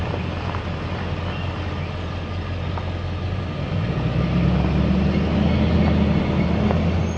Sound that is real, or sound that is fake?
real